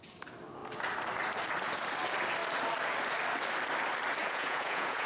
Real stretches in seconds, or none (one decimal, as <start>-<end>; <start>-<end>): 0.0-4.2